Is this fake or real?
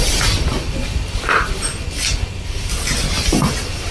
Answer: real